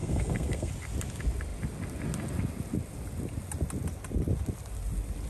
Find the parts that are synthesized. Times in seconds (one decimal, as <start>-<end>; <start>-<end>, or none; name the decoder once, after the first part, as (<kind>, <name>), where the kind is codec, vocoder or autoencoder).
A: 0.0-0.7 (codec, SNAC)